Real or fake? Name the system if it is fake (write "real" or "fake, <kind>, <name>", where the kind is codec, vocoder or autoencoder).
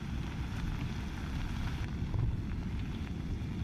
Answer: real